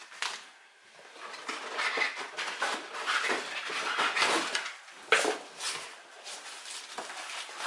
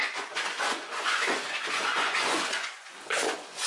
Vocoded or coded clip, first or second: second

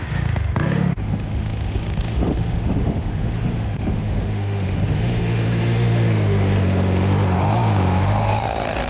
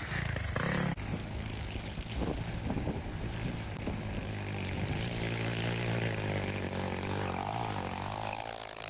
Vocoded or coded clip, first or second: first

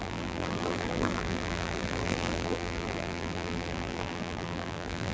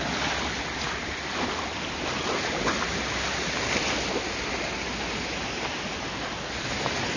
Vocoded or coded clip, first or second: first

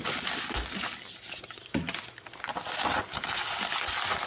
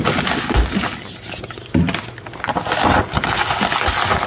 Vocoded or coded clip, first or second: first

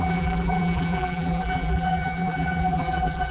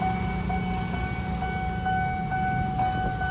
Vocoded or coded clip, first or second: first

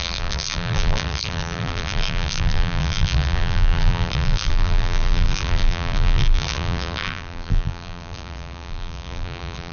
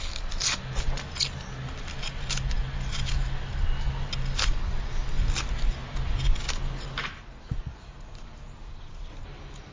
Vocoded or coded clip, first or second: first